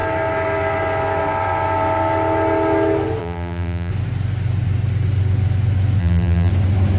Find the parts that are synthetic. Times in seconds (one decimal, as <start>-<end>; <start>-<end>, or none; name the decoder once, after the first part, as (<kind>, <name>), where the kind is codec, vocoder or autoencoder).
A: 3.2-3.9 (vocoder, BigVGAN v2); 6.0-6.5